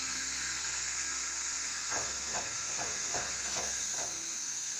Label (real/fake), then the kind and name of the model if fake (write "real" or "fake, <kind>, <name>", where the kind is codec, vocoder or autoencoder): fake, codec, SNAC